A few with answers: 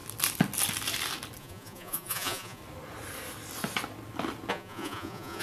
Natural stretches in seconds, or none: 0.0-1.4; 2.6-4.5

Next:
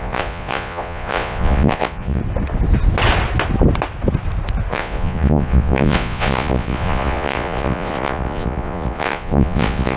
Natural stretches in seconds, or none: 2.2-4.7

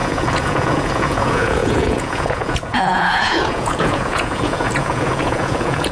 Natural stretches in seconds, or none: none

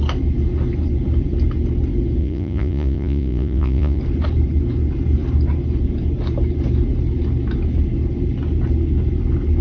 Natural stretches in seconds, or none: 0.0-2.2; 4.0-9.6

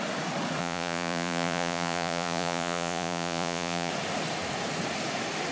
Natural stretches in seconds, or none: 0.0-0.6; 3.9-5.5

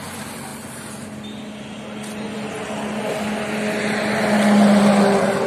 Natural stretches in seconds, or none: 0.0-5.5